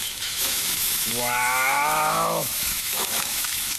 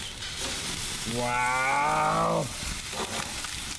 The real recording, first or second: second